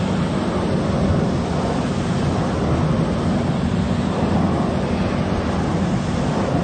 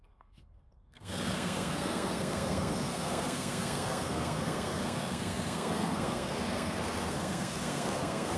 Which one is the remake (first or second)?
second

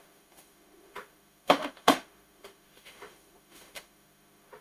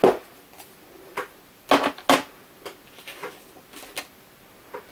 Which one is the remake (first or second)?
first